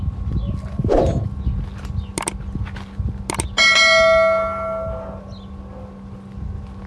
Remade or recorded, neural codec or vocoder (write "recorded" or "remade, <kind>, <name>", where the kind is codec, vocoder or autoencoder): recorded